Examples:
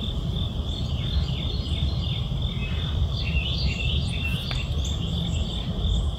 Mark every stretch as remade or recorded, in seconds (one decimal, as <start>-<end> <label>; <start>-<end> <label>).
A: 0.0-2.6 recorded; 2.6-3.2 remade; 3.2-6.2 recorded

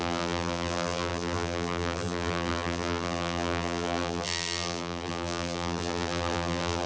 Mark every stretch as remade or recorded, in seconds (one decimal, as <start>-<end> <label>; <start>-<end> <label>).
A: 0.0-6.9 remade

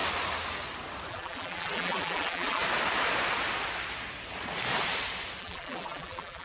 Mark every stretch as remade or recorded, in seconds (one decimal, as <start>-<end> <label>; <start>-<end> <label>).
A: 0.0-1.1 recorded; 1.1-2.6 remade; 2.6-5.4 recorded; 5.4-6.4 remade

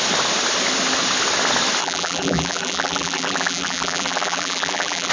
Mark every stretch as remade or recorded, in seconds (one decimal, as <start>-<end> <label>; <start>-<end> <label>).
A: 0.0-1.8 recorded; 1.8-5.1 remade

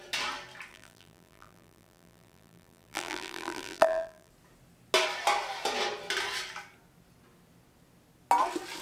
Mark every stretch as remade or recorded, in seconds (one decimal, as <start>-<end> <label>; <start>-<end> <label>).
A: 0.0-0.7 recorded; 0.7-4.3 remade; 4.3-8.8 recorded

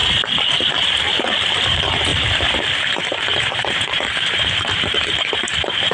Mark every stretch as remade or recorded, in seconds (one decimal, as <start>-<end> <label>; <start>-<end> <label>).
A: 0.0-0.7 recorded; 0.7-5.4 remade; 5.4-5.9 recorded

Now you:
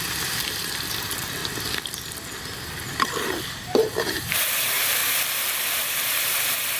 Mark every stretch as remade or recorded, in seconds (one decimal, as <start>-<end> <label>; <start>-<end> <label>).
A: 0.0-1.4 remade; 1.4-3.5 recorded; 3.5-5.0 remade; 5.0-5.7 recorded; 5.7-6.8 remade

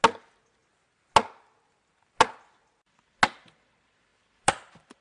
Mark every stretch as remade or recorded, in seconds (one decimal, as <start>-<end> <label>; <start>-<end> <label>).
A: 0.0-4.1 recorded; 4.1-5.0 remade